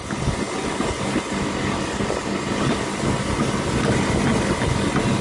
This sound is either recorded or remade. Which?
recorded